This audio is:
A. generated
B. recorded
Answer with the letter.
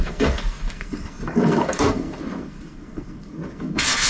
A